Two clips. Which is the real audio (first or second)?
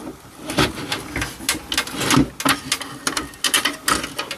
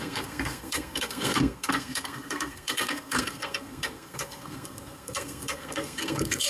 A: first